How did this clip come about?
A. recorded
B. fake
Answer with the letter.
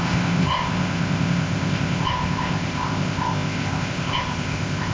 B